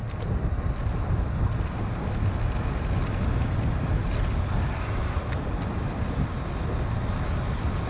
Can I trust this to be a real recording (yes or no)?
yes